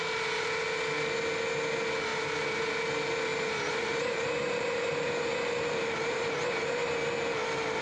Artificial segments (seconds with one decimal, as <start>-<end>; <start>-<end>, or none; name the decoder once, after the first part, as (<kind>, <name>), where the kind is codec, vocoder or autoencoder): 2.1-2.7 (vocoder, BigVGAN v2); 3.3-6.9